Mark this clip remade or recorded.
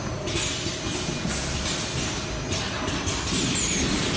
recorded